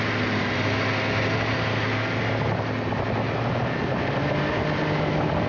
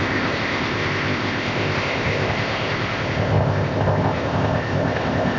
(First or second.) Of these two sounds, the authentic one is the first